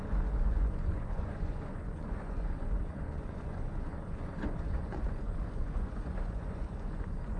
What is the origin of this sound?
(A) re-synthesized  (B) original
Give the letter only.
A